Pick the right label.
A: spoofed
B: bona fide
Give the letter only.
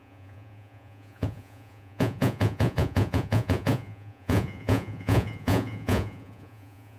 A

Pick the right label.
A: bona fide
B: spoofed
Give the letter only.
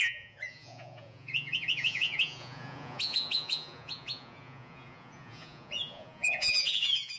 B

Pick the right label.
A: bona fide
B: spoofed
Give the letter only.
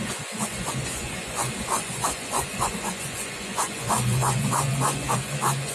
B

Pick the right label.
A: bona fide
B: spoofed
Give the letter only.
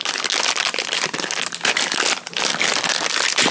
A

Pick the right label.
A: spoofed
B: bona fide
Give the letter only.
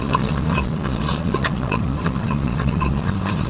A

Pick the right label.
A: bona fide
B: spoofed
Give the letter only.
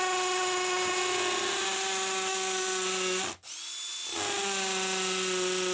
A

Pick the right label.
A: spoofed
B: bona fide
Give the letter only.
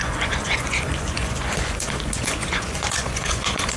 A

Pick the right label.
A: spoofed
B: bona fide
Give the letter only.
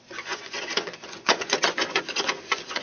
A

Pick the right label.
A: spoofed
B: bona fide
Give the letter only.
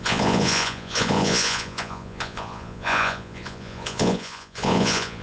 A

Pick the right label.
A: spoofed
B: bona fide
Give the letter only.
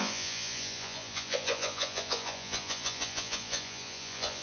A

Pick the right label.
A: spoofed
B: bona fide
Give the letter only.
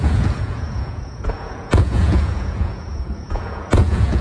A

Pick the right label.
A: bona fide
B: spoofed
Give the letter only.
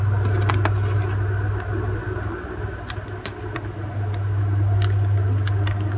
A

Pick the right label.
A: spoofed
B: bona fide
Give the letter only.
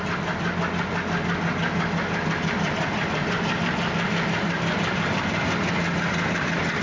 B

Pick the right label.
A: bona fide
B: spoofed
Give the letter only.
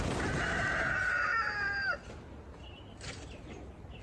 A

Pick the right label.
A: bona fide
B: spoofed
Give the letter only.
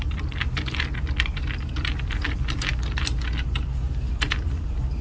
A